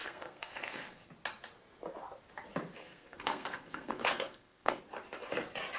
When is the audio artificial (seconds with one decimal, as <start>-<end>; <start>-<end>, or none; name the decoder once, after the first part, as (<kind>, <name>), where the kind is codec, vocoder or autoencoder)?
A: 0.0-1.1 (codec, SNAC); 2.8-4.8